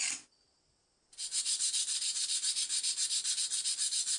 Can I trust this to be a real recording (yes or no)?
yes